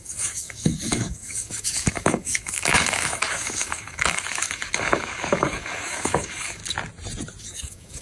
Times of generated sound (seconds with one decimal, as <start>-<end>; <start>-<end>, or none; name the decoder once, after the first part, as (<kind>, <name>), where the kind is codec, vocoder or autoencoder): 0.0-6.6 (codec, DAC); 7.4-8.0